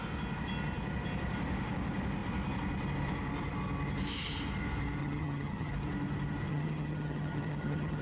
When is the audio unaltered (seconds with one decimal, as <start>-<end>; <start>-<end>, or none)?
0.0-5.0; 5.7-6.5